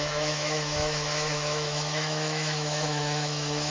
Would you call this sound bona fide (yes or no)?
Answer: no